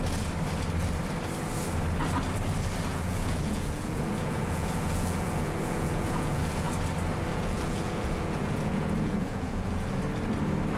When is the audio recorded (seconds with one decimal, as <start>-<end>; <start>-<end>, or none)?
0.0-2.9; 6.7-7.3; 10.0-10.8